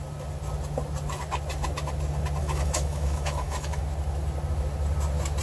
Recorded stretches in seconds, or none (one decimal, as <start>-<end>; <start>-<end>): 0.0-2.4; 3.8-5.4